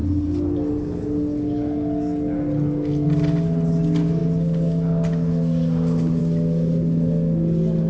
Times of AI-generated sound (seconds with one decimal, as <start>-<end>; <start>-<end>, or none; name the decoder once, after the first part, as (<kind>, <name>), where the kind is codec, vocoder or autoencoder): none